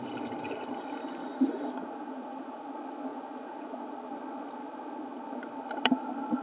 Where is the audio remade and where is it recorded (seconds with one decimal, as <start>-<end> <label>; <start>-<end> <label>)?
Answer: 0.0-1.8 recorded; 1.8-2.6 remade; 2.6-3.1 recorded; 3.1-3.8 remade; 3.8-6.4 recorded